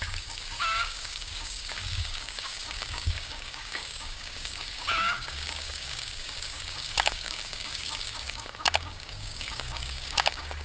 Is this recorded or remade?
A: remade